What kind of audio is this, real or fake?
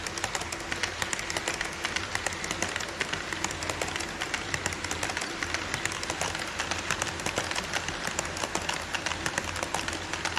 real